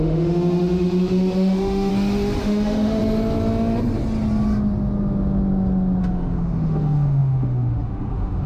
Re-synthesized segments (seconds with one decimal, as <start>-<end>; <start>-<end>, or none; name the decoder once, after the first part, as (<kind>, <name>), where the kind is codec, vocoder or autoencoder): 0.0-1.9 (autoencoder, DAC-VAE); 2.4-3.0; 6.0-8.5